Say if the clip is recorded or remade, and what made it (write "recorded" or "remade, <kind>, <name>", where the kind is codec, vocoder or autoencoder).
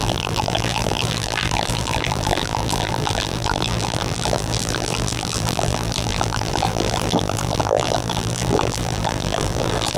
remade, vocoder, BigVGAN v2